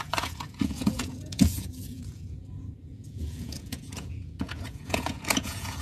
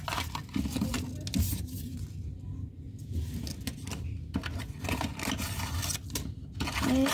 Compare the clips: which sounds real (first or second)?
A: second